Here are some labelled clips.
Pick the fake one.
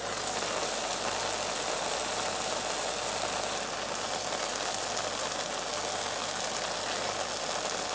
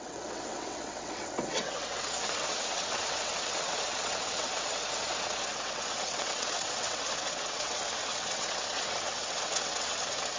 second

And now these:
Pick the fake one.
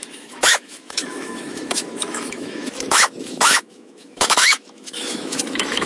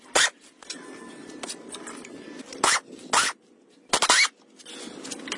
first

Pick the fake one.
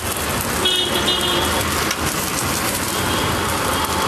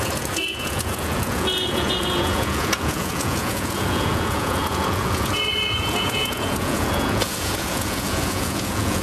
second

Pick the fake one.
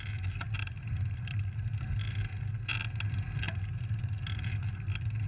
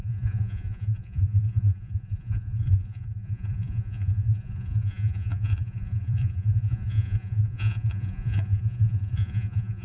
second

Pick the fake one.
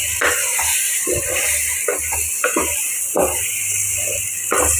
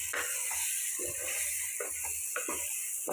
first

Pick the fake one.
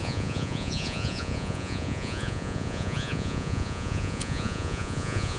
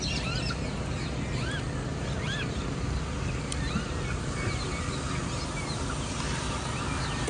first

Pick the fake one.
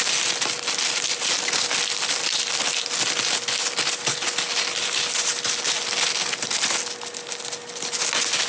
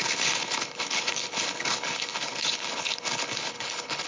second